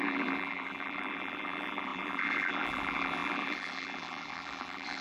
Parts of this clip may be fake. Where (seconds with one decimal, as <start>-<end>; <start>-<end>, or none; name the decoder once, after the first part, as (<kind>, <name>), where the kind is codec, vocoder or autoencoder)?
0.0-5.0 (vocoder, BigVGAN v2)